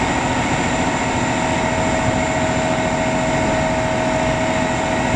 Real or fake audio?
real